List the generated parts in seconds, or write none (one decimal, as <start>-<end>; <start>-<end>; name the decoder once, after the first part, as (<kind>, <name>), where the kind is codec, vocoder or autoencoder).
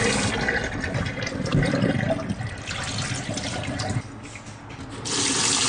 none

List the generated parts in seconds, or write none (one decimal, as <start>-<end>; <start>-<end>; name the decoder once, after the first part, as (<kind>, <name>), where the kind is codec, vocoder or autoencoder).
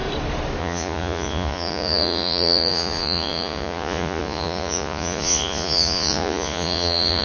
0.6-7.2 (vocoder, Vocos)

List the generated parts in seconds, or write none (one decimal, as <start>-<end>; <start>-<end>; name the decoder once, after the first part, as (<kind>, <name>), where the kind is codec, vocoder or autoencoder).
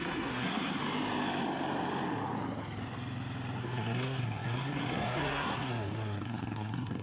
0.0-0.8 (codec, SNAC); 3.6-7.0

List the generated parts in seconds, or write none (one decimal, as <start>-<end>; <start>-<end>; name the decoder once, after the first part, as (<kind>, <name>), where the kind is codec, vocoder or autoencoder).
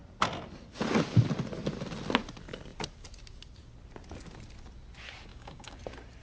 5.3-5.8 (codec, DAC)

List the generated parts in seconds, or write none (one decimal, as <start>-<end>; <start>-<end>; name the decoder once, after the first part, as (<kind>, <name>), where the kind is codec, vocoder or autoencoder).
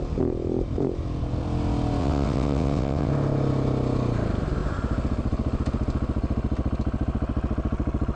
2.0-3.1 (vocoder, WaveNeXt)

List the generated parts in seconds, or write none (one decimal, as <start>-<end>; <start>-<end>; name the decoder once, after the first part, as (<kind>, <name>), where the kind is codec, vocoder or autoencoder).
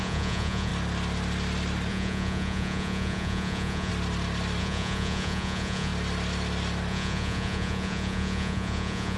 0.0-0.7 (vocoder, Vocos); 1.9-3.9; 4.6-5.9; 6.9-9.2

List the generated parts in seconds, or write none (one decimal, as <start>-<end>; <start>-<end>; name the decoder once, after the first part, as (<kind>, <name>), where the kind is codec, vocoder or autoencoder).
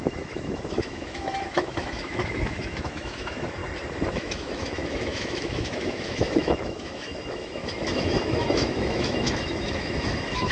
0.0-3.6 (autoencoder, DAC-VAE); 4.1-10.5